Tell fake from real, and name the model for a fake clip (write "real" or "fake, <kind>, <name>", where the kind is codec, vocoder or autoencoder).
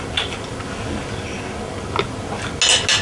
real